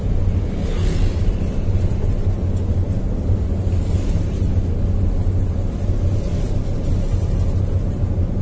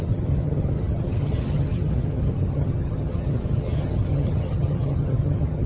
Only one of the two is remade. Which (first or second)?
second